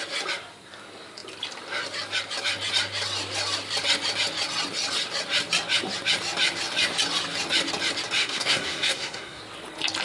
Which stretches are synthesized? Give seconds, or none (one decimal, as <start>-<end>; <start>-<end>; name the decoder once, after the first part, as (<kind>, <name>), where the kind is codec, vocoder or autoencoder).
8.2-9.4 (codec, SNAC)